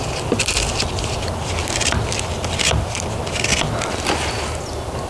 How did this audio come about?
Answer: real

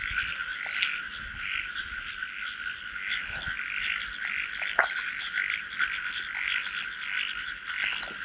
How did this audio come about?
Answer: real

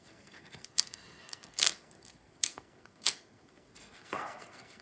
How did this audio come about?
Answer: fake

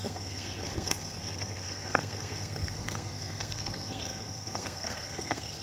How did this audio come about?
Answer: fake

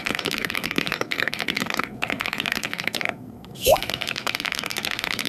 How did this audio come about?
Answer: fake